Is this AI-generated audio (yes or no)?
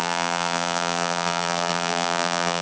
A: yes